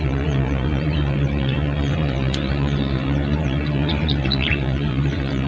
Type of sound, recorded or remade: remade